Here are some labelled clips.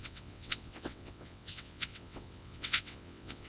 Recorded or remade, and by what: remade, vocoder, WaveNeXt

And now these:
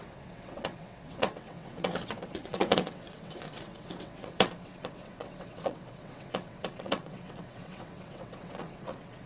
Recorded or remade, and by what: remade, vocoder, WaveNeXt